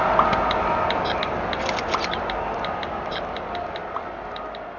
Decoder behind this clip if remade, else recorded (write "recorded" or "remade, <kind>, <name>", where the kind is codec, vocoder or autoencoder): recorded